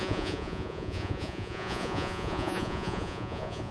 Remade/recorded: remade